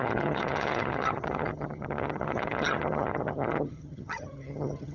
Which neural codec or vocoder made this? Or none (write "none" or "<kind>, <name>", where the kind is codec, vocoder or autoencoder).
vocoder, HiFi-GAN